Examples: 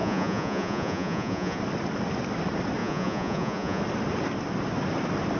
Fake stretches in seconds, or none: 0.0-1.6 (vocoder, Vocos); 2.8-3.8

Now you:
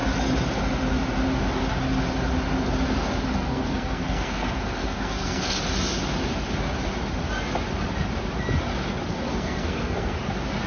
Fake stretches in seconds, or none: 3.3-5.6 (codec, SNAC); 9.1-10.2

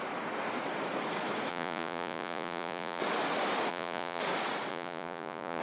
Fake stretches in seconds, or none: 1.5-3.0 (vocoder, Vocos); 3.7-4.2; 4.7-5.6